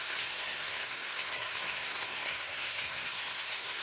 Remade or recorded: remade